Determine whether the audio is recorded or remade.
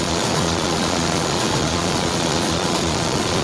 remade